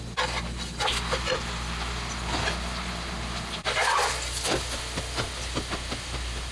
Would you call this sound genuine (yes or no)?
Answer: yes